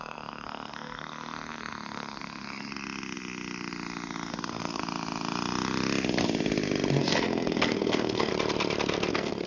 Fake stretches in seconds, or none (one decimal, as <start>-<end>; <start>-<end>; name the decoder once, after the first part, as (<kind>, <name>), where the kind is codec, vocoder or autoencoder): 0.0-2.7 (codec, SNAC); 4.3-4.8; 7.0-8.3; 9.1-9.5